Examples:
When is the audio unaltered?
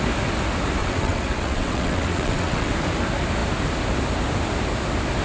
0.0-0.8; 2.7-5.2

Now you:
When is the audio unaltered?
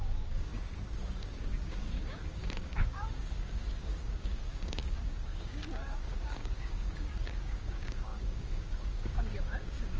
none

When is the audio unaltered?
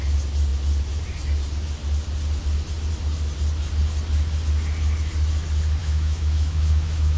0.0-5.8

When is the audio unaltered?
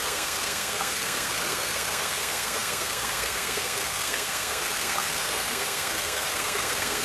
none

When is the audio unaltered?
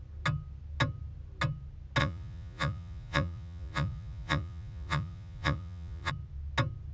0.0-2.0; 6.1-6.9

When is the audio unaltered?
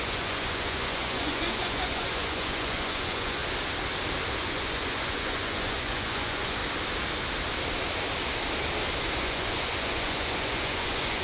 3.4-4.4; 6.6-9.2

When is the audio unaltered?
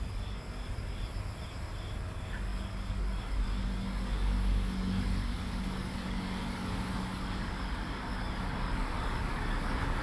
1.0-2.0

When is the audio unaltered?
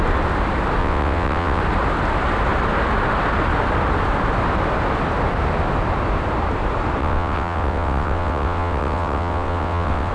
0.0-0.8; 1.6-7.0